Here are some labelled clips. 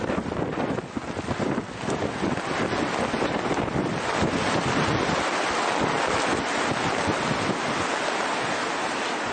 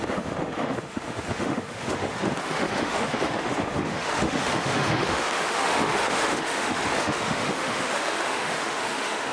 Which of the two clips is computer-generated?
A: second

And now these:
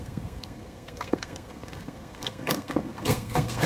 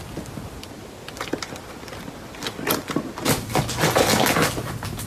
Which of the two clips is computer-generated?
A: first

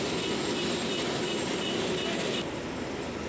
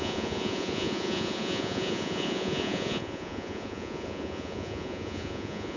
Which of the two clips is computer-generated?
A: second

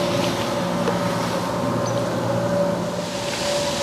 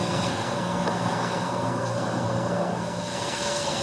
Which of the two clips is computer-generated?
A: second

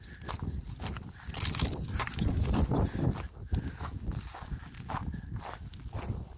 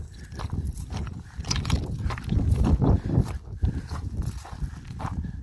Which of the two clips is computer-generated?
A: second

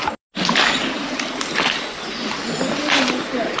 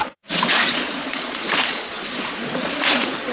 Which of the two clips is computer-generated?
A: second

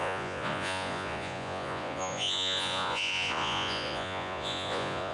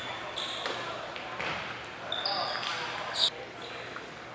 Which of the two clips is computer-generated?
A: first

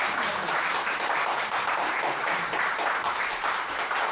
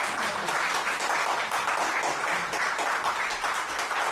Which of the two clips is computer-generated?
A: first